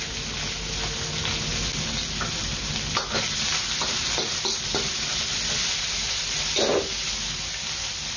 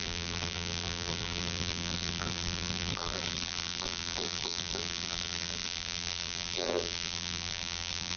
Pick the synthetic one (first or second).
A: second